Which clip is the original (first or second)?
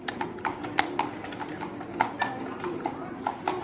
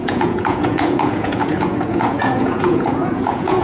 first